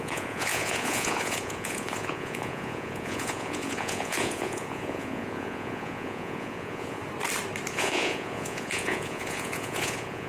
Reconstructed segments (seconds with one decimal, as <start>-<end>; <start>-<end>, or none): 0.0-7.0; 7.7-10.3